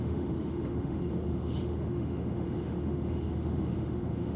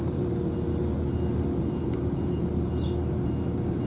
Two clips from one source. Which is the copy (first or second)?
first